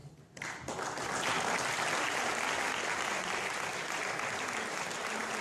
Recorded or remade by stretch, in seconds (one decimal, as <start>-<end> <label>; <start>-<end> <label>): 0.0-5.4 recorded

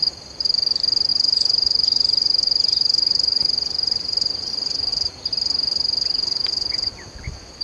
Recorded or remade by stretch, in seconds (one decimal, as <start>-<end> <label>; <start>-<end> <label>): 0.0-1.1 recorded; 1.1-4.5 remade; 4.5-7.6 recorded